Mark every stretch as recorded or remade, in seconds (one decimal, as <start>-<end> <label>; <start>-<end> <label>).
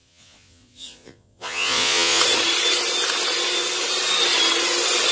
0.0-2.2 remade; 2.2-5.1 recorded